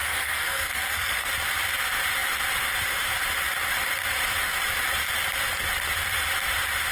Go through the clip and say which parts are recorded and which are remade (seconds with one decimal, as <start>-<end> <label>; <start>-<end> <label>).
0.0-1.3 remade; 1.3-6.9 recorded